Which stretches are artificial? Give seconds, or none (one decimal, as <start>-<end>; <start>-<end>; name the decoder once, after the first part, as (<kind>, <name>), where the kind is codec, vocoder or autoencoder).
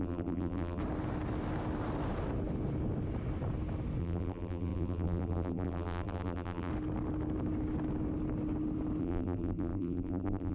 0.0-0.8 (vocoder, BigVGAN v2); 4.0-6.7; 9.0-10.5